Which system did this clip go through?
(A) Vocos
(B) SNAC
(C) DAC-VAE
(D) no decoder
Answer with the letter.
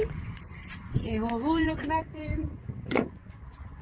A